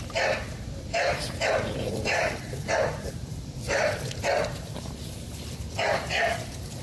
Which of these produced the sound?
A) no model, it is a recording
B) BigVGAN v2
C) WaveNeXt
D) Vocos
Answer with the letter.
B